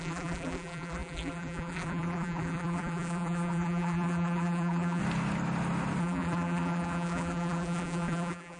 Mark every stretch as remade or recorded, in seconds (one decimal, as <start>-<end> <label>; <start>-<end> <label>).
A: 0.0-5.0 remade; 5.0-6.0 recorded; 6.0-8.6 remade